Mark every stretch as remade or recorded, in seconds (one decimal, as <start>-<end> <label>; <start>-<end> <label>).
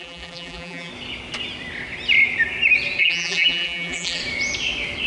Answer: 0.0-0.9 remade; 0.9-3.0 recorded; 3.0-4.2 remade; 4.2-5.1 recorded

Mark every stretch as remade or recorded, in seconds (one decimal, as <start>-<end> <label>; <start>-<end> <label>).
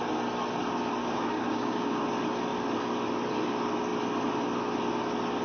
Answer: 0.0-1.0 recorded; 1.0-2.0 remade; 2.0-5.4 recorded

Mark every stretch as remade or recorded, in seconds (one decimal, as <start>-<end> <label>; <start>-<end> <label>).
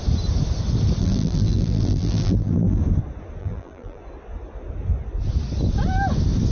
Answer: 0.0-1.0 recorded; 1.0-2.8 remade; 2.8-3.4 recorded; 3.4-4.0 remade; 4.0-6.5 recorded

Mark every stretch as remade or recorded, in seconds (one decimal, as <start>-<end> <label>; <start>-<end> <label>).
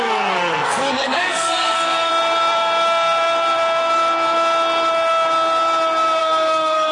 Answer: 0.0-2.1 remade; 2.1-6.2 recorded; 6.2-6.9 remade